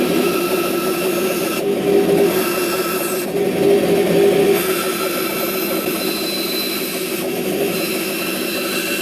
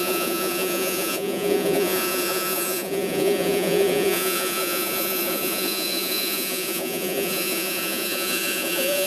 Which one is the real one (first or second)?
first